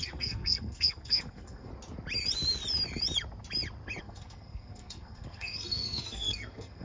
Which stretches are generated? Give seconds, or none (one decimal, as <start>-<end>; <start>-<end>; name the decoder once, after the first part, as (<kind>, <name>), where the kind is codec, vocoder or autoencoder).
0.0-1.7 (codec, SNAC); 4.0-6.8